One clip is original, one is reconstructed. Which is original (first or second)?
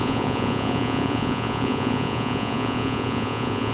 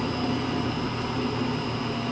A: second